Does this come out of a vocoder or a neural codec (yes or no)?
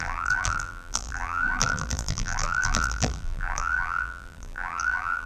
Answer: yes